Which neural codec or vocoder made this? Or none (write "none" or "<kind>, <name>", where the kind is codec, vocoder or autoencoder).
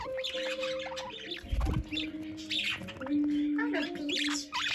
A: none